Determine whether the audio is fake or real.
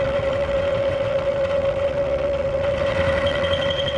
fake